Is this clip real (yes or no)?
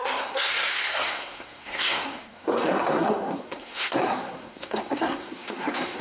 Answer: no